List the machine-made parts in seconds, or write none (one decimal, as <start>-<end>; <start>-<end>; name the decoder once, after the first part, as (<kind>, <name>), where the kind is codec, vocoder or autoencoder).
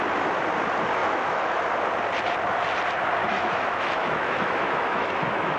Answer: 1.0-1.6 (autoencoder, DAC-VAE); 3.2-5.6